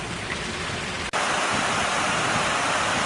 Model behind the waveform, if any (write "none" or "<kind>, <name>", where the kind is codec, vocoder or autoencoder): none